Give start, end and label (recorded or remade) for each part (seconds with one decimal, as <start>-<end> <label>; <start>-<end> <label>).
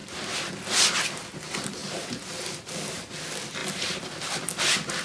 0.0-5.0 recorded